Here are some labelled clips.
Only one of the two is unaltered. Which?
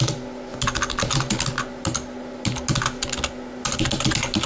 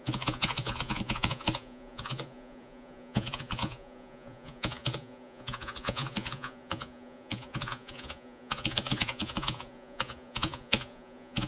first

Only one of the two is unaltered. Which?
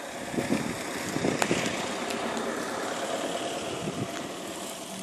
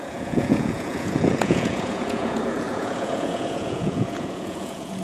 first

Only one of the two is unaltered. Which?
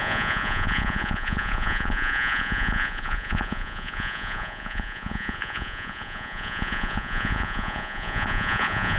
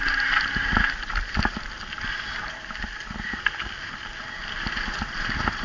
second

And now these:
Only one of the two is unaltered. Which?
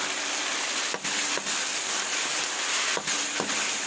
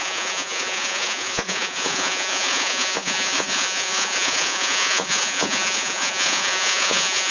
first